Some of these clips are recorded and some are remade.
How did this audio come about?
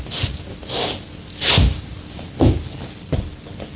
recorded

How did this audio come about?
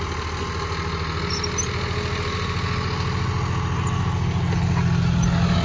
recorded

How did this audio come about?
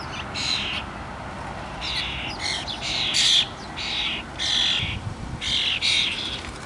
recorded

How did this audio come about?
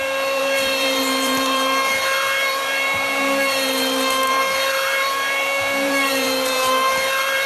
remade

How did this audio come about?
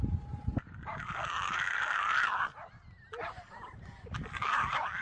recorded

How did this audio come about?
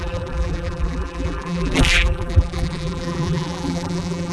remade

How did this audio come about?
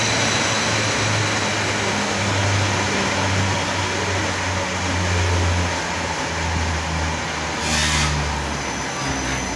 recorded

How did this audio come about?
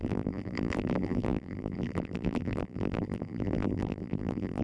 remade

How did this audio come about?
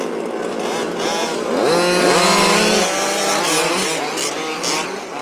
recorded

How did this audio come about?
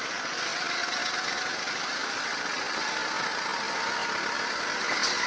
recorded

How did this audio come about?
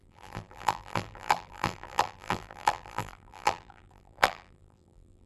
remade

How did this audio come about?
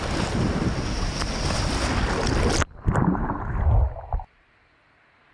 recorded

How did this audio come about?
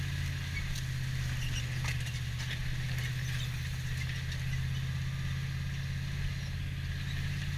recorded